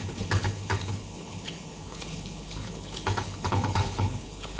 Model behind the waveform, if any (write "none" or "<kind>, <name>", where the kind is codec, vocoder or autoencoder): codec, HILCodec